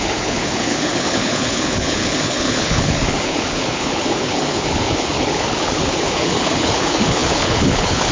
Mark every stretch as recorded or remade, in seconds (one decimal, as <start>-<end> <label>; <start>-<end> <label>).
0.0-8.1 remade